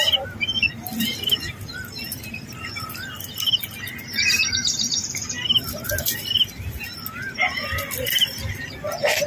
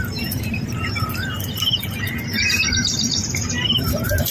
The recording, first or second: first